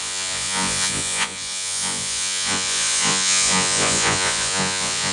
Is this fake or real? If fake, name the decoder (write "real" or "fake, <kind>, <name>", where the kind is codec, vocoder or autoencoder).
fake, vocoder, Vocos